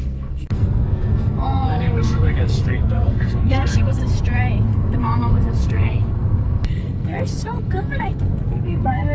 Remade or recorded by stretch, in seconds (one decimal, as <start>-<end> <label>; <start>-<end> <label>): 0.0-4.0 remade; 4.0-4.7 recorded; 4.7-9.1 remade